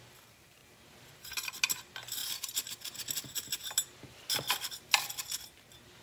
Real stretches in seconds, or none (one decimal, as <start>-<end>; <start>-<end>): 0.0-0.6; 1.5-2.2; 5.2-6.0